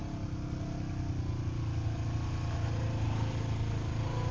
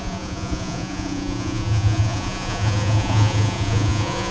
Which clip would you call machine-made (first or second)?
second